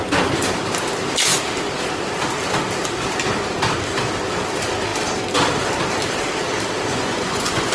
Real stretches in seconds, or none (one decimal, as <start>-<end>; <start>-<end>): 0.0-6.9